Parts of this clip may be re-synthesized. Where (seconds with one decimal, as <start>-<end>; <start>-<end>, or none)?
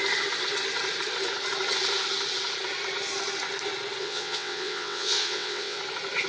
4.0-5.8